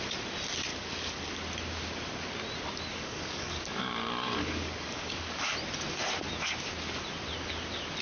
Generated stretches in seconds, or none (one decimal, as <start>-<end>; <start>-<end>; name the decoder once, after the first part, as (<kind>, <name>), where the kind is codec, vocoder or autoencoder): 0.7-1.3 (codec, DAC); 2.9-5.4